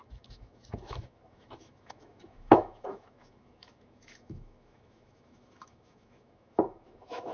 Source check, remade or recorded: remade